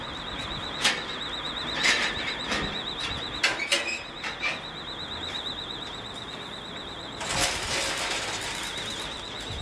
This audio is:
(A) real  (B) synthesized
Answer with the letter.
A